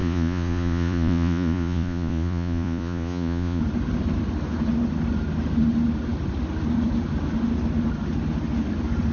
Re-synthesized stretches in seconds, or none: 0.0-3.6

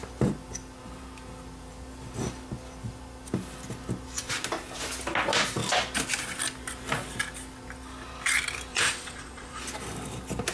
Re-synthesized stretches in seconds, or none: 8.7-9.6